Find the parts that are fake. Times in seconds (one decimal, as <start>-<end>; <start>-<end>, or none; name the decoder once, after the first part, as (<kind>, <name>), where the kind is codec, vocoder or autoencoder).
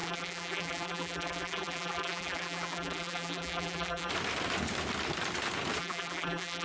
0.0-4.1 (vocoder, BigVGAN v2); 5.8-6.6